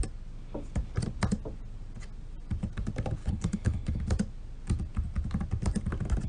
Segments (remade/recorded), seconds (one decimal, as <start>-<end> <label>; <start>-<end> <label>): 0.0-3.2 recorded; 3.2-4.0 remade; 4.0-6.3 recorded